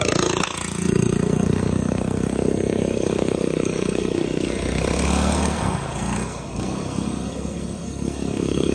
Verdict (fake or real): fake